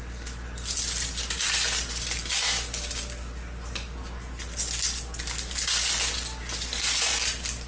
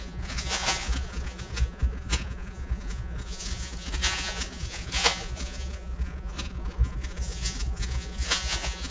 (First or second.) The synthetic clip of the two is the second